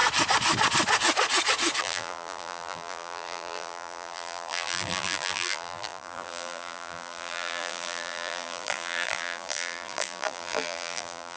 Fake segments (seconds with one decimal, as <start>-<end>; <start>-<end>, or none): 1.8-11.4